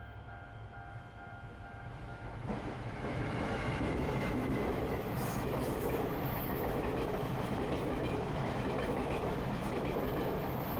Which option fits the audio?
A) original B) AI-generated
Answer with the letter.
B